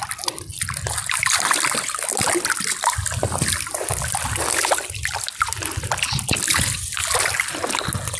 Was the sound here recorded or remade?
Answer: recorded